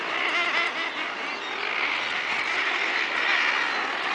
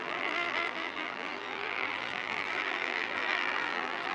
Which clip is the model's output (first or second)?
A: second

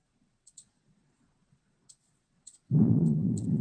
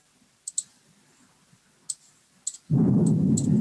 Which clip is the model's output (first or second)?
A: first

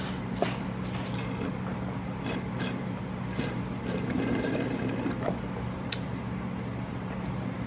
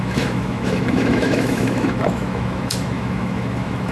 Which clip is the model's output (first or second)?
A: second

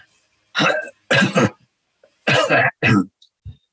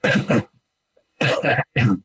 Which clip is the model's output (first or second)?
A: second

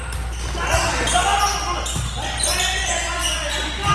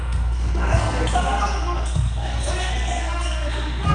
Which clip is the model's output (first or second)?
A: second